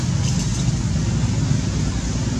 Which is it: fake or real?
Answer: real